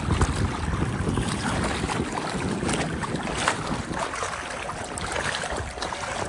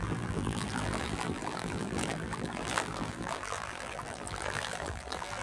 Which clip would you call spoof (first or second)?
second